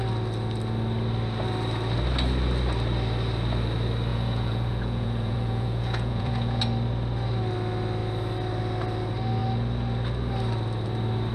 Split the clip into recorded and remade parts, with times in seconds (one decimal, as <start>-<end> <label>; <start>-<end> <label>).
0.0-4.1 recorded; 4.1-6.6 remade; 6.6-11.3 recorded